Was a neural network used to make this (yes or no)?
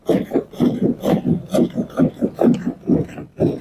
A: no